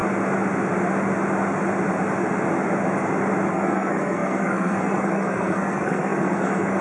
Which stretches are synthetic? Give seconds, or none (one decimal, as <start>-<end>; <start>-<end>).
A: 3.5-6.8